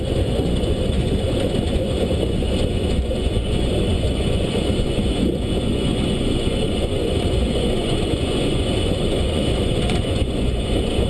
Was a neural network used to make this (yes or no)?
yes